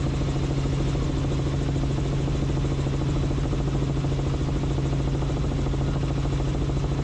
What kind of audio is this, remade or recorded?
recorded